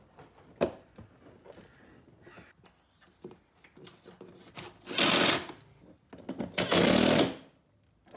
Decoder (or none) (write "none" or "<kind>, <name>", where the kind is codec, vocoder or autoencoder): none